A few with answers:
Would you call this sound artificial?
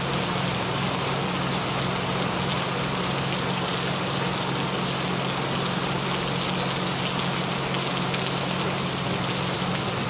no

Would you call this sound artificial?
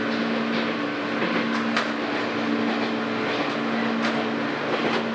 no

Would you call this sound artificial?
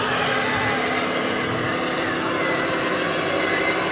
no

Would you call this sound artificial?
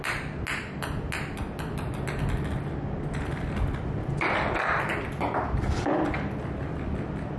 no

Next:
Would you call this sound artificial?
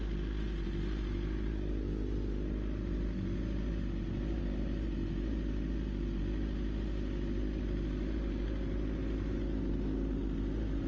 no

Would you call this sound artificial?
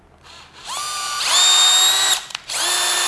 no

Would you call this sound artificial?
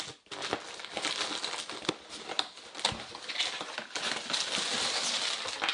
no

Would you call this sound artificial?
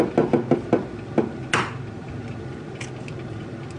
no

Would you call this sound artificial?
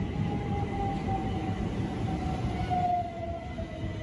no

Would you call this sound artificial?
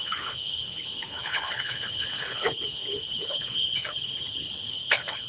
yes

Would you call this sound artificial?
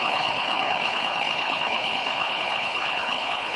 yes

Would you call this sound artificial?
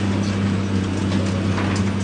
no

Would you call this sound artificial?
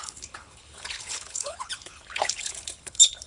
yes